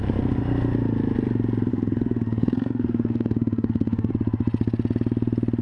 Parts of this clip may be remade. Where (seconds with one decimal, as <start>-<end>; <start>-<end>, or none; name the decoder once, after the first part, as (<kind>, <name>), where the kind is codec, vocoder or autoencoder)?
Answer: 1.7-4.1 (codec, SNAC)